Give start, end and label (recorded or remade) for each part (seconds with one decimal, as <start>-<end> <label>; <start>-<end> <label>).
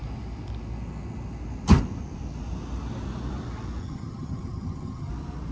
0.0-3.8 recorded; 3.8-5.1 remade; 5.1-5.5 recorded